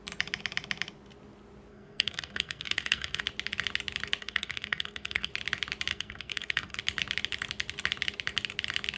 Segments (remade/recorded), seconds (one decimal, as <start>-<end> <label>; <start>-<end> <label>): 0.0-1.7 recorded; 1.7-3.2 remade; 3.2-4.2 recorded; 4.2-5.3 remade; 5.3-5.9 recorded; 5.9-6.8 remade; 6.8-9.0 recorded